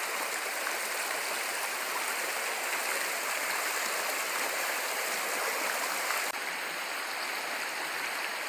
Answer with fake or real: real